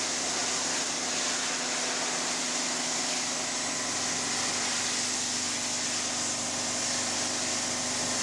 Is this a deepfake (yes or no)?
no